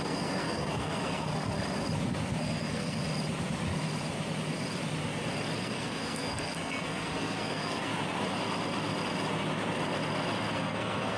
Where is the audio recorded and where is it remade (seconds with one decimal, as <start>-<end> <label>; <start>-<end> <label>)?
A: 0.0-1.3 remade; 1.3-2.4 recorded; 2.4-3.0 remade; 3.0-5.6 recorded; 5.6-7.9 remade; 7.9-10.5 recorded; 10.5-11.2 remade